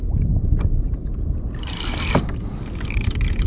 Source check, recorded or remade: recorded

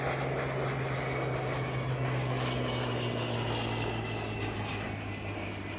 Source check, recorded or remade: recorded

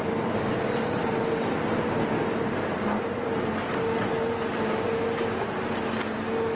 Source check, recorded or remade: recorded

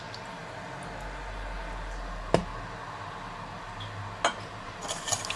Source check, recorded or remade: recorded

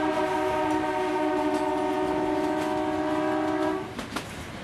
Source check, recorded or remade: recorded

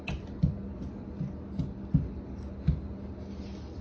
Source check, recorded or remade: recorded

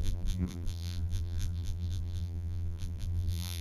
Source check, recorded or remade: remade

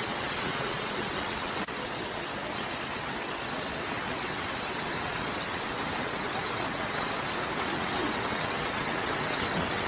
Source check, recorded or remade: remade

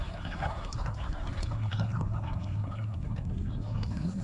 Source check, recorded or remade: remade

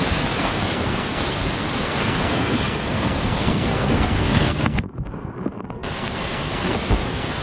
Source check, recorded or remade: remade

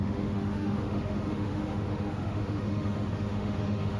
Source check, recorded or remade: remade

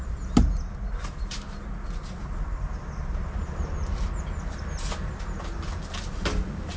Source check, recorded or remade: recorded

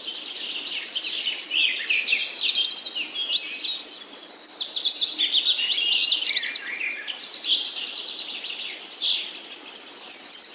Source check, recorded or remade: recorded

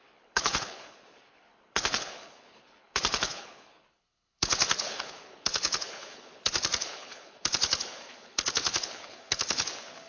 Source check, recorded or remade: remade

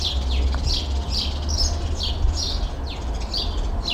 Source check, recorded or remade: recorded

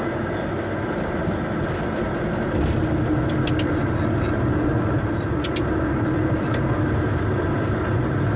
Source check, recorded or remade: recorded